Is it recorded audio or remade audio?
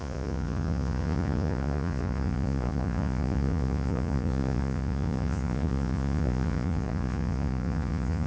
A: remade